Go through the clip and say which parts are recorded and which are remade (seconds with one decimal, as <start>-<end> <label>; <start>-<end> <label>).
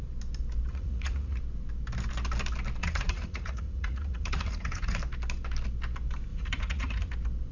0.0-0.7 recorded; 0.7-1.4 remade; 1.4-2.8 recorded; 2.8-5.0 remade; 5.0-6.3 recorded; 6.3-7.1 remade; 7.1-7.5 recorded